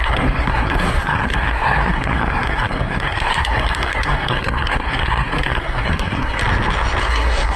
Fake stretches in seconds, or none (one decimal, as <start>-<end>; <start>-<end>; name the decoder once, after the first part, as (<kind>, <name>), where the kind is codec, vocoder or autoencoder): 0.0-6.4 (codec, SNAC); 7.0-7.6